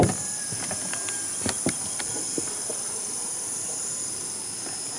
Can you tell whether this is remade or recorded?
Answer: recorded